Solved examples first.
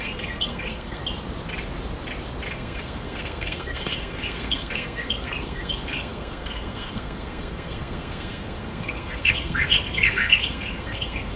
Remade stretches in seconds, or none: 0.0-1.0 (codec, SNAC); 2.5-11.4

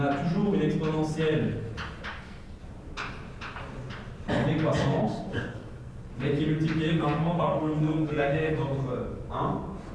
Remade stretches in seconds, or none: 2.1-2.6 (codec, SNAC); 4.9-6.1; 6.9-8.5

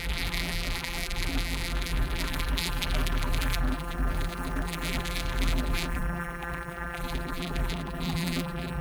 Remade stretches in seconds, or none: 0.0-8.8 (vocoder, BigVGAN v2)

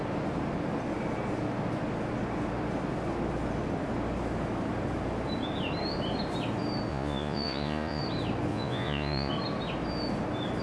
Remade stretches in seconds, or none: 6.9-8.0 (vocoder, Vocos); 8.5-9.3

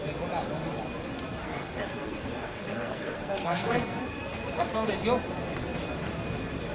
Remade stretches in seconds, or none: 1.4-4.9 (codec, SNAC)

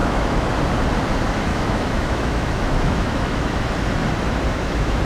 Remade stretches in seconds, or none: 0.0-0.5 (autoencoder, DAC-VAE); 1.5-3.7; 4.5-5.0

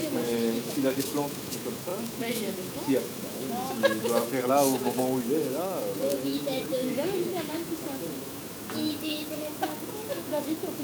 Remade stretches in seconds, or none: 0.0-10.8 (autoencoder, DAC-VAE)

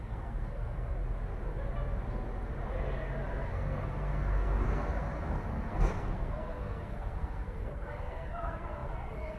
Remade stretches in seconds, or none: 0.0-1.0 (codec, SNAC); 3.3-9.4